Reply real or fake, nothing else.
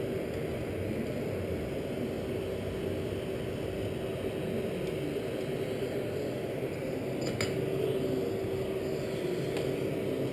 real